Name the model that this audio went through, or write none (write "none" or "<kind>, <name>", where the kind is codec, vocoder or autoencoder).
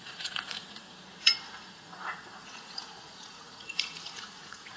vocoder, Vocos